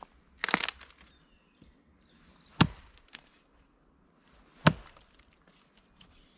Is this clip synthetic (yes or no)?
no